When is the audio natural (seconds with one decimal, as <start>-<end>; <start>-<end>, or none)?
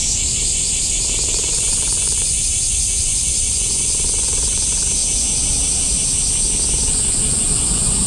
0.0-1.3; 5.0-6.9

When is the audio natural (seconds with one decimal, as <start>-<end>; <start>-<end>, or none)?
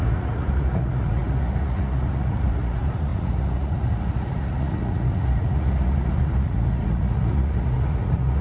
none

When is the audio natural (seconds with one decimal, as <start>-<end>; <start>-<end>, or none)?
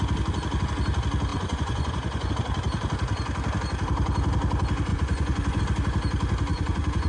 0.0-1.3; 2.3-4.9; 5.6-6.5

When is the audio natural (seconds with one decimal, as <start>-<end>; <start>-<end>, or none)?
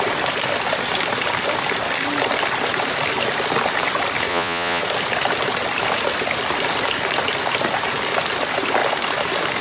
0.0-4.3; 4.8-9.6